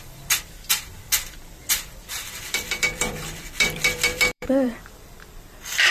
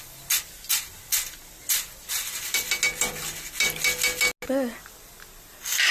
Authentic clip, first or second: second